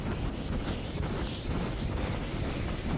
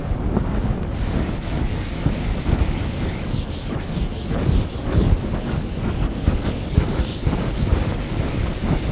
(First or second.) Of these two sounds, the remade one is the second